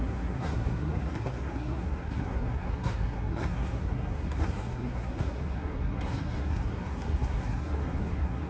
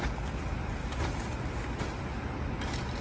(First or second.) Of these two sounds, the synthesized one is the first